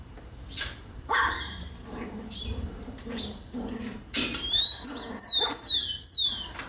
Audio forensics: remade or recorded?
remade